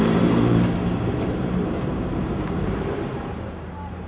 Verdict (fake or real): fake